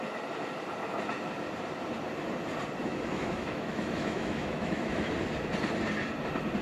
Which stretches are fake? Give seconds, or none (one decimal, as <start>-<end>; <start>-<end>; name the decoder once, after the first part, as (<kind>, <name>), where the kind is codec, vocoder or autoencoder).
2.8-5.1 (autoencoder, DAC-VAE)